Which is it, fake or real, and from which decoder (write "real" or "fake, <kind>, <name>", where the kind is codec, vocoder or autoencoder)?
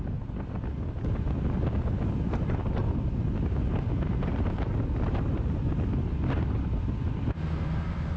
real